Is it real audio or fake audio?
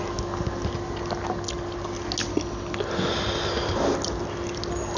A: real